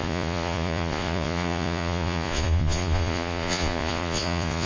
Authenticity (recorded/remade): remade